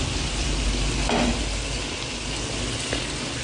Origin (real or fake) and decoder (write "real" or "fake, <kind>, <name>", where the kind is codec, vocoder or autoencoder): real